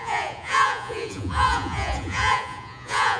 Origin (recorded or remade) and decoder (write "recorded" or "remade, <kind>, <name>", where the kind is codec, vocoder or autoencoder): remade, vocoder, Vocos